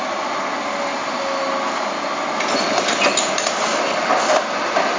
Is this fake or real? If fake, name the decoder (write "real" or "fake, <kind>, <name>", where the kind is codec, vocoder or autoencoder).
real